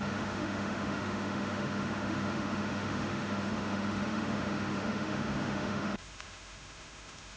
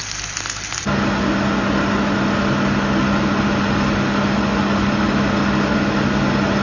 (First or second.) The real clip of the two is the second